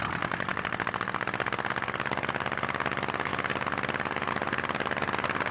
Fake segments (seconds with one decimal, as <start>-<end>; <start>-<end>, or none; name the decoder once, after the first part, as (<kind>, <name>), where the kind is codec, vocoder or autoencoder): none